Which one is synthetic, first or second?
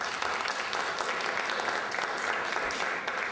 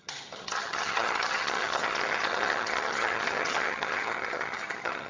second